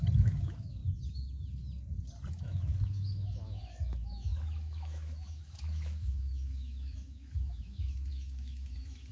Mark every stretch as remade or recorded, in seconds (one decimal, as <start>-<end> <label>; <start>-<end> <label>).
0.0-0.8 remade; 0.8-2.3 recorded; 2.3-9.1 remade